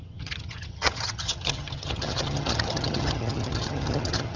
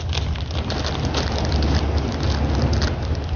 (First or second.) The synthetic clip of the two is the first